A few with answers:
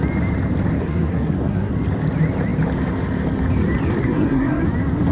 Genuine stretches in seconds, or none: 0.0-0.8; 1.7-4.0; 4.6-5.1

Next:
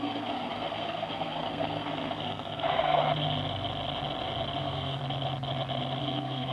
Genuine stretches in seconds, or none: 3.0-4.6; 5.0-6.0

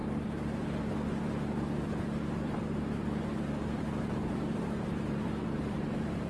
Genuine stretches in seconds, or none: 0.0-3.8

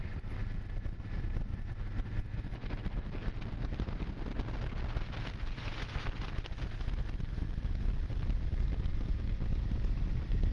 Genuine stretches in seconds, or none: 0.0-10.5

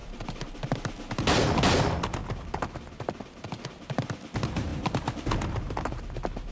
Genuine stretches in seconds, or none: 0.0-6.5